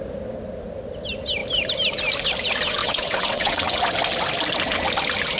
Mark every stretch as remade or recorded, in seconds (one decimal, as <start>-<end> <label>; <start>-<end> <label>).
0.0-2.8 recorded; 2.8-3.8 remade; 3.8-5.4 recorded